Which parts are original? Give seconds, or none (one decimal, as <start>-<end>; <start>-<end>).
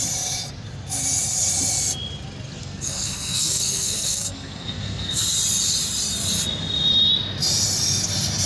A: 0.0-2.6; 5.2-8.5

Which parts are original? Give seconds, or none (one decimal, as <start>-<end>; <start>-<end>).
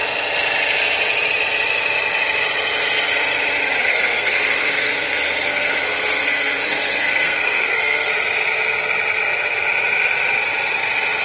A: 0.0-3.9; 8.1-11.2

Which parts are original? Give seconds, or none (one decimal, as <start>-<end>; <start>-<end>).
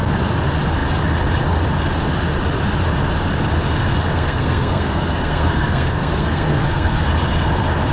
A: 0.0-4.1; 7.1-7.9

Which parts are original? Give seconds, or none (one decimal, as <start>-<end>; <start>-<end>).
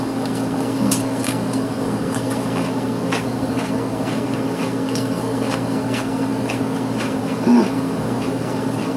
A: none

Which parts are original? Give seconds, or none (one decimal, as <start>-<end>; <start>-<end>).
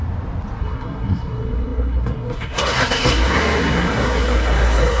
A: 0.0-0.6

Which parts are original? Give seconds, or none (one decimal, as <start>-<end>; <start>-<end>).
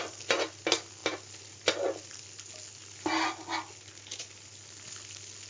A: 0.0-5.5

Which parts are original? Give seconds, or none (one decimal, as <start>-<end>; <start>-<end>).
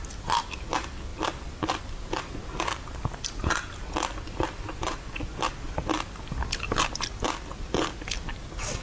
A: 0.0-8.8